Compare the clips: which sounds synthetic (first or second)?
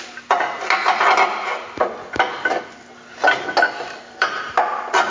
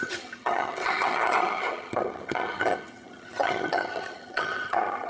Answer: second